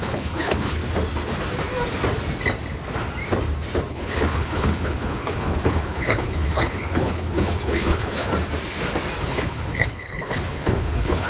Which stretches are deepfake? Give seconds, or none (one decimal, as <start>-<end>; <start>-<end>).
0.0-0.8; 3.9-8.3; 9.2-11.3